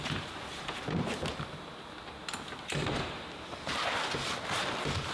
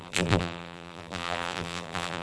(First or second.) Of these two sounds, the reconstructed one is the second